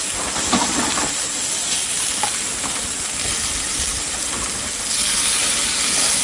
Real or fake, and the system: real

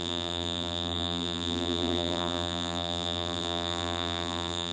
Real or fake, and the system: fake, vocoder, BigVGAN v2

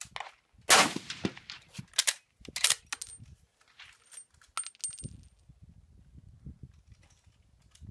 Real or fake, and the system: real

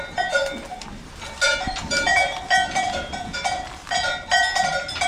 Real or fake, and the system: real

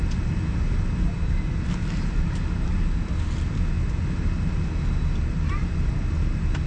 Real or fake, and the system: real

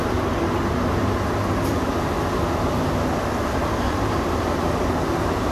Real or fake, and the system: real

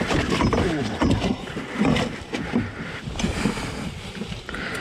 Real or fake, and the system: fake, vocoder, BigVGAN v2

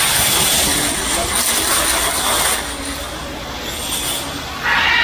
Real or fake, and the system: real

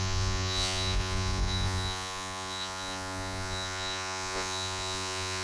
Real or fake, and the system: fake, vocoder, Vocos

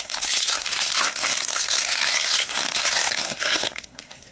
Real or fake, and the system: fake, codec, SNAC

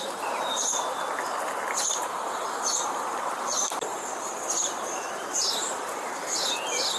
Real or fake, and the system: real